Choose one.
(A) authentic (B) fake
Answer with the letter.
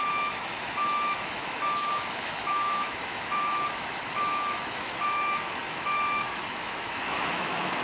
B